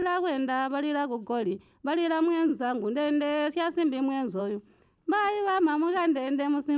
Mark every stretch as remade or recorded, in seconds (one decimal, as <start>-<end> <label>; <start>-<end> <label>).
0.0-1.6 remade; 1.6-6.8 recorded